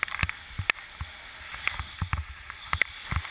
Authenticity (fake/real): real